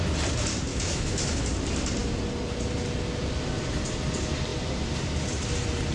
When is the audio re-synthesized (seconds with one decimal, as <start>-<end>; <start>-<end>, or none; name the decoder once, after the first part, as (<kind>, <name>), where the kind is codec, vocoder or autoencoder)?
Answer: 0.7-1.4 (autoencoder, DAC-VAE)

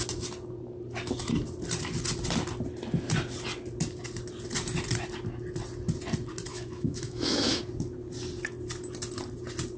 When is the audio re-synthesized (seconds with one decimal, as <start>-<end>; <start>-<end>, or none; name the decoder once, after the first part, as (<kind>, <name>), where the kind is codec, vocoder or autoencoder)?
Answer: 6.5-7.6 (autoencoder, DAC-VAE)

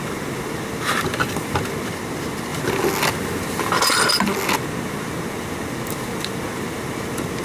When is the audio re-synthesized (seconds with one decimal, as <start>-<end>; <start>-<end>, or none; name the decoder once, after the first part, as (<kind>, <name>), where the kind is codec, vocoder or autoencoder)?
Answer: none

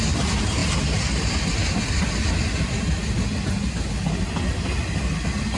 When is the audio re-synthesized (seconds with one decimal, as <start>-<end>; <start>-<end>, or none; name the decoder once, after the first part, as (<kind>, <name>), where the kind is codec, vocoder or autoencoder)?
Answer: none

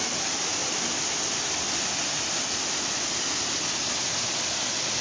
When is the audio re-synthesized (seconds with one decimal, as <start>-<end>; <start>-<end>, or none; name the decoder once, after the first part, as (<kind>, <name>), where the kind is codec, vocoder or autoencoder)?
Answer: none

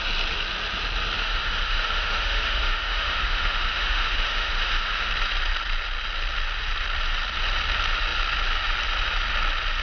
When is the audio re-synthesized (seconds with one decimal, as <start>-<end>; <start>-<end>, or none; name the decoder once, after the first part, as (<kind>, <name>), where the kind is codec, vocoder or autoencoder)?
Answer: 1.2-5.1 (autoencoder, DAC-VAE)

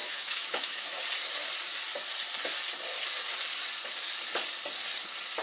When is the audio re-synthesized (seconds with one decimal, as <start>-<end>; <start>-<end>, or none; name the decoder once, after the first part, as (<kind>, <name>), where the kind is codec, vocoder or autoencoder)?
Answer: 0.0-1.0 (autoencoder, DAC-VAE)

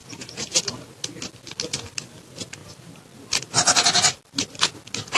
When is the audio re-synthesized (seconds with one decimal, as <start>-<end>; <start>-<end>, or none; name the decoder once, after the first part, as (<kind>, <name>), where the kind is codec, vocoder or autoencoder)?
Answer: none